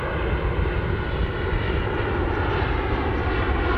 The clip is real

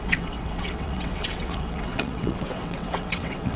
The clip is fake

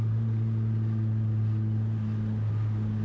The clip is real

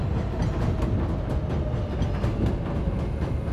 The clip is real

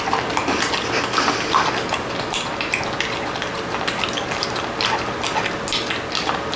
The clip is real